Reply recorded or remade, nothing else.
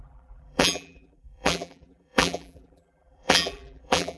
remade